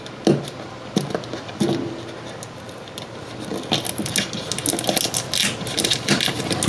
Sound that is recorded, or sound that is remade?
recorded